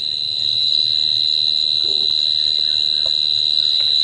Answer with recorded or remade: recorded